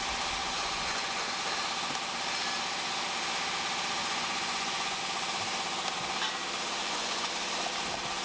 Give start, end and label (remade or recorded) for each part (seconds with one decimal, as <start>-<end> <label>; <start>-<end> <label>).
0.0-0.4 recorded; 0.4-1.3 remade; 1.3-4.0 recorded; 4.0-5.0 remade; 5.0-6.8 recorded; 6.8-7.3 remade; 7.3-8.2 recorded